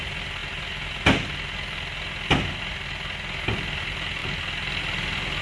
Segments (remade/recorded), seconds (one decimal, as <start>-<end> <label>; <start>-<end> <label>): 0.0-5.4 recorded